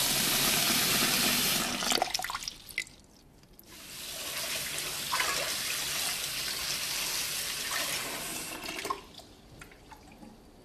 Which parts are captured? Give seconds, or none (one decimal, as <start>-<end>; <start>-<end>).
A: 0.0-10.6